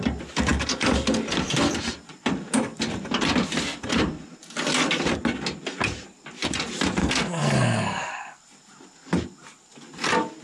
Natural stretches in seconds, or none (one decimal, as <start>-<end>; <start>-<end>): 0.0-7.0; 8.4-10.4